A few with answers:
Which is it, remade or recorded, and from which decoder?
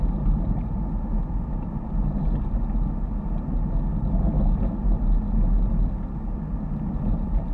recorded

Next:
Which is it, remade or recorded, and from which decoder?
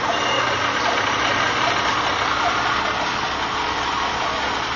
recorded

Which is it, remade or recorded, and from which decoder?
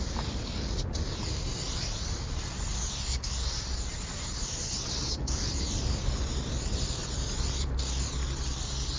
recorded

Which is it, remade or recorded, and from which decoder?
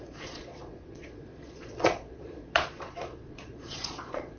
remade, vocoder, Vocos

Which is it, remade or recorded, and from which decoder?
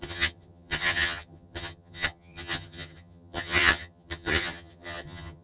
remade, vocoder, HiFi-GAN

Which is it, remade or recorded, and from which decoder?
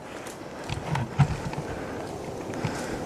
recorded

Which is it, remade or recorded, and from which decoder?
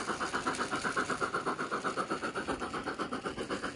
recorded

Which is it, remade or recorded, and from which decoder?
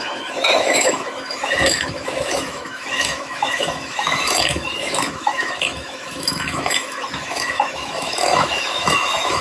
remade, autoencoder, DAC-VAE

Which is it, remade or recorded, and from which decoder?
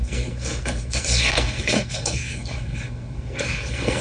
remade, codec, SNAC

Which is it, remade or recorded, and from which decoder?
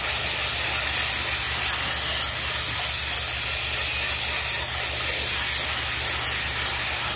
recorded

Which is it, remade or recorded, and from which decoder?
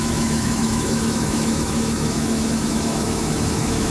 remade, autoencoder, DAC-VAE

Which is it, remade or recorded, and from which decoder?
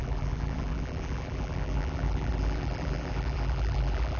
remade, vocoder, BigVGAN v2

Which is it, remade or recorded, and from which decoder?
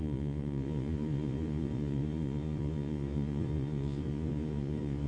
remade, vocoder, Vocos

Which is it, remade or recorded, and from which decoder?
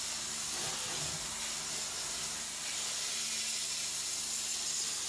recorded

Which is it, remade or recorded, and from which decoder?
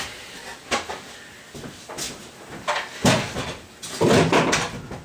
recorded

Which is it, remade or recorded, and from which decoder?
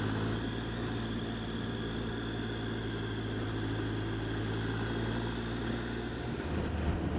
recorded